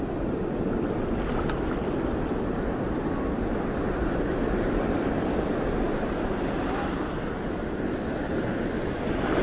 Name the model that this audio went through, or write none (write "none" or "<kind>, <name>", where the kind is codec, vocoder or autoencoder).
none